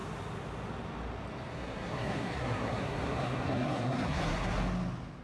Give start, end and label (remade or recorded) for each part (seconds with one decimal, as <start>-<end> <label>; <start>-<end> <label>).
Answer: 0.0-1.5 recorded; 1.5-4.6 remade; 4.6-5.2 recorded